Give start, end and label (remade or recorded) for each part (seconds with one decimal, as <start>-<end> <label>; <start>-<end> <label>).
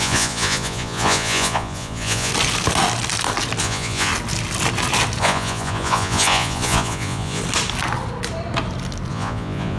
0.0-2.3 remade; 2.3-3.6 recorded; 3.6-4.1 remade; 4.1-5.2 recorded; 5.2-7.4 remade; 7.4-9.1 recorded; 9.1-9.8 remade